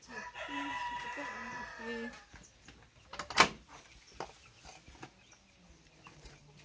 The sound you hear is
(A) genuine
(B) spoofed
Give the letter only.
A